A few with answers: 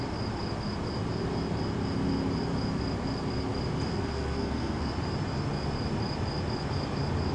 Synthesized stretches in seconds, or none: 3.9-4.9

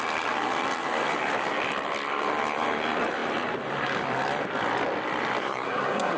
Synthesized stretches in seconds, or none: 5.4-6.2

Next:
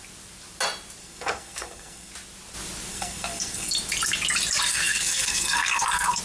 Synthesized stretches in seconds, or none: 1.0-2.1; 2.9-3.7; 4.7-6.2

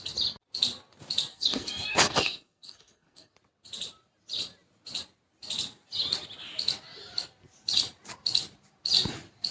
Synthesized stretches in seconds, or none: 1.3-3.3

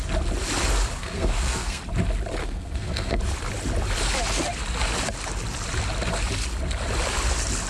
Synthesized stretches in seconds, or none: 1.0-1.8; 2.4-3.2

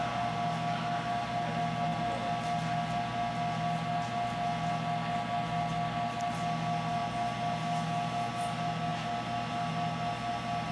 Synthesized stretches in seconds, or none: none

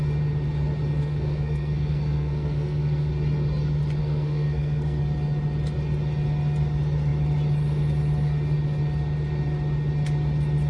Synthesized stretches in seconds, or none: 1.0-3.1; 4.0-5.0

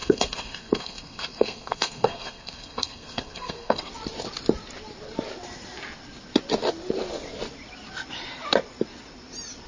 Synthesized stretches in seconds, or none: 0.0-3.9